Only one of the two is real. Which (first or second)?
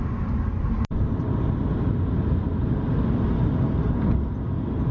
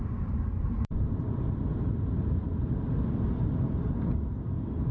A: first